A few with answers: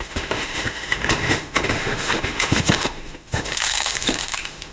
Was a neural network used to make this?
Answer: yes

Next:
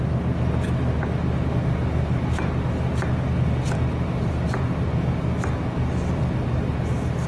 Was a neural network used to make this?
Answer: no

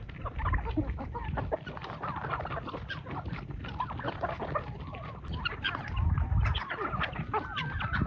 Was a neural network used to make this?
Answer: no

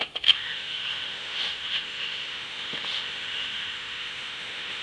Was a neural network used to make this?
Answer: yes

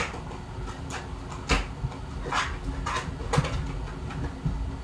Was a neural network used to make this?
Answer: no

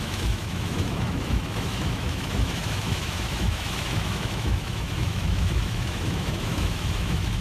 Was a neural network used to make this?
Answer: yes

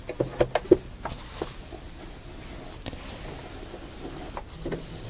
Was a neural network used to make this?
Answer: no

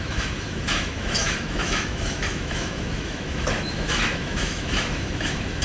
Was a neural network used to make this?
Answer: yes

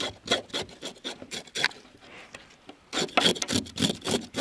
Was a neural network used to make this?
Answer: no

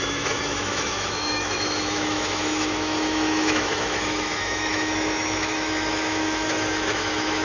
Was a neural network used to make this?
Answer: yes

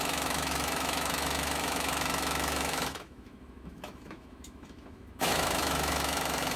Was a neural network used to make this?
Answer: yes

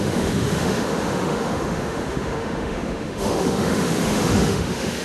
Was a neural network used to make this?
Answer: yes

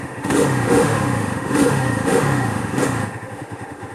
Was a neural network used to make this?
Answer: yes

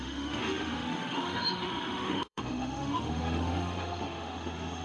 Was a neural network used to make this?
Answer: yes